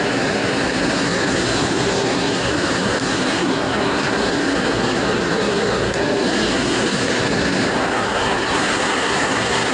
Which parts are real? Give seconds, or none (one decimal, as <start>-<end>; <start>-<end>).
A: none